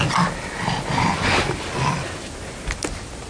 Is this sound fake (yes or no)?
no